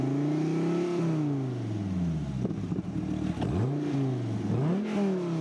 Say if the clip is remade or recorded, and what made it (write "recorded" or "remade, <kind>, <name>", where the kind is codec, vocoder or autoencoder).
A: recorded